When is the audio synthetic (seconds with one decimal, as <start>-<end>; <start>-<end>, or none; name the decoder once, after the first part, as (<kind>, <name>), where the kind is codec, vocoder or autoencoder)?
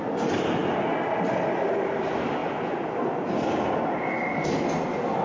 none